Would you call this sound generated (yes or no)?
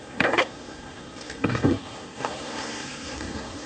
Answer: yes